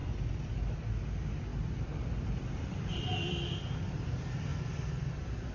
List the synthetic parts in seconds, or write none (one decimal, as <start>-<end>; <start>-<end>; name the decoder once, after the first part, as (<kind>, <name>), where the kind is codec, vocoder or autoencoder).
0.0-0.5 (vocoder, BigVGAN v2); 1.5-3.6; 4.5-5.1